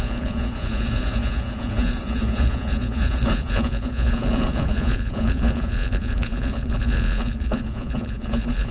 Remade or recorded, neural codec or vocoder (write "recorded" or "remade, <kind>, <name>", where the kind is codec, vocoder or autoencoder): remade, vocoder, Vocos